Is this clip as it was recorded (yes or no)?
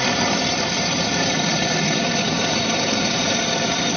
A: no